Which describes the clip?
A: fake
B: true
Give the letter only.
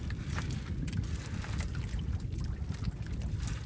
B